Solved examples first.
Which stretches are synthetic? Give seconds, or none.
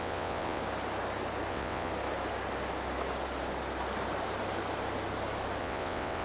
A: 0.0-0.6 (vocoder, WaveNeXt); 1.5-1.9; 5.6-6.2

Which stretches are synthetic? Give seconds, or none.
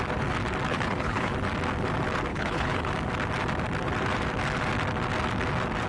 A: 0.7-1.3 (codec, HILCodec); 2.3-2.9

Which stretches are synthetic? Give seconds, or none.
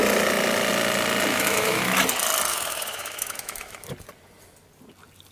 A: 1.3-1.8 (autoencoder, DAC-VAE); 2.5-3.9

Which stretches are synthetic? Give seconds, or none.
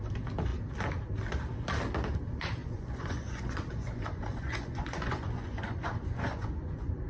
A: 2.6-7.1 (vocoder, Vocos)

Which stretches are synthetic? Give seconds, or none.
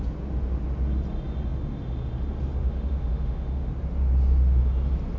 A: 2.6-3.7 (autoencoder, DAC-VAE)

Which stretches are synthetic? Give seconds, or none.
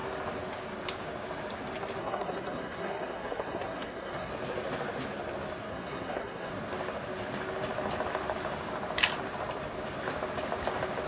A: 2.0-4.3 (codec, SNAC); 5.7-6.5